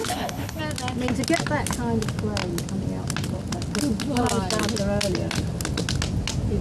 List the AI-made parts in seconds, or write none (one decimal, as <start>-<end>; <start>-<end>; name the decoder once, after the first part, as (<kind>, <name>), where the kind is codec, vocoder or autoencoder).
0.0-0.6 (codec, HILCodec)